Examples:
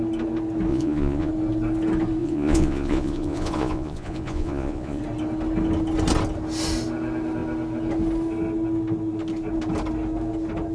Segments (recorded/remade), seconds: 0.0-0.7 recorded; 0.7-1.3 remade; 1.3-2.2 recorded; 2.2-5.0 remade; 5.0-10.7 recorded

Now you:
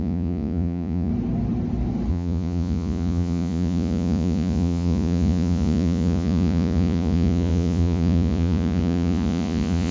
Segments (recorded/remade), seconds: 0.0-1.1 remade; 1.1-2.1 recorded; 2.1-9.9 remade

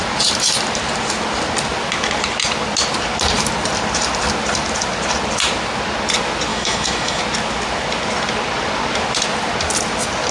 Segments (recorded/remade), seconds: 0.0-6.5 recorded; 6.5-7.2 remade; 7.2-10.3 recorded

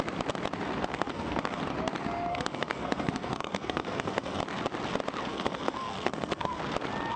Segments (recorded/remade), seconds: 0.0-0.9 recorded; 0.9-1.6 remade; 1.6-2.3 recorded; 2.3-4.4 remade; 4.4-5.3 recorded; 5.3-6.6 remade; 6.6-7.2 recorded

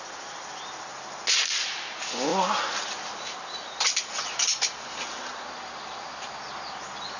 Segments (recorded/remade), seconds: 0.0-7.2 recorded

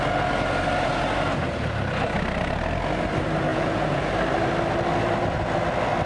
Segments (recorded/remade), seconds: 0.0-3.5 recorded; 3.5-4.1 remade; 4.1-6.1 recorded